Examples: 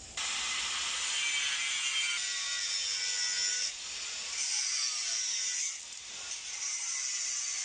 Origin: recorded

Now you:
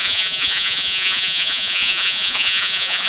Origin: remade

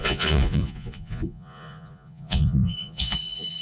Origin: remade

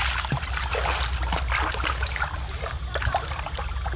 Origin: recorded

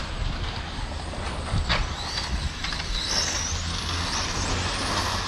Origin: recorded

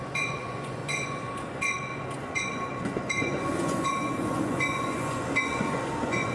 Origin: remade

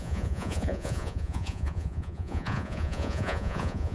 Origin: remade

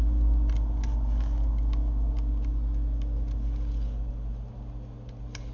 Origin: recorded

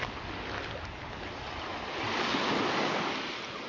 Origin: recorded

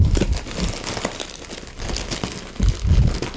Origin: recorded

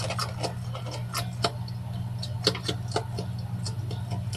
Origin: recorded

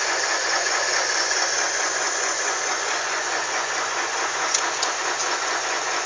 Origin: remade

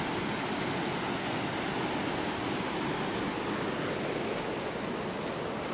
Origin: recorded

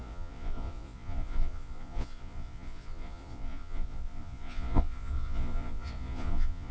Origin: remade